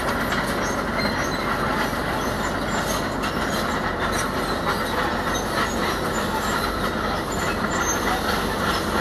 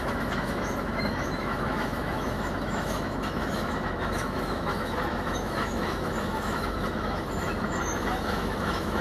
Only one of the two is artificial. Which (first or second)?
second